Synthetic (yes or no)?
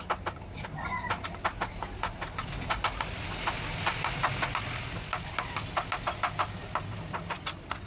no